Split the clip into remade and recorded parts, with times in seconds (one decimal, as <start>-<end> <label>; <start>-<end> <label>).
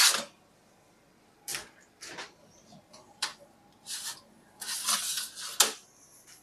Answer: 0.0-3.3 remade; 3.3-6.4 recorded